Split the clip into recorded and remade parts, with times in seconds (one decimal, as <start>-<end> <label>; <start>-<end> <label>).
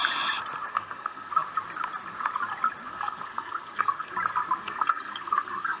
0.0-0.7 recorded; 0.7-1.3 remade; 1.3-2.9 recorded; 2.9-4.1 remade; 4.1-4.6 recorded; 4.6-5.8 remade